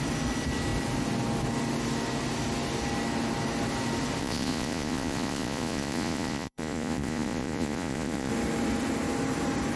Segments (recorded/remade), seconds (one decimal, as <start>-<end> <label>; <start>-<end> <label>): 0.0-4.2 recorded; 4.2-8.3 remade; 8.3-9.8 recorded